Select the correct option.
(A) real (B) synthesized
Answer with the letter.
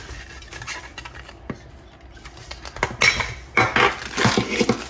A